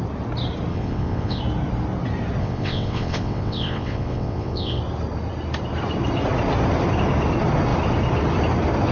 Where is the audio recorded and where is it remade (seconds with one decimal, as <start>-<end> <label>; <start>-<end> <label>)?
0.0-0.7 recorded; 0.7-1.4 remade; 1.4-2.4 recorded; 2.4-4.8 remade; 4.8-8.9 recorded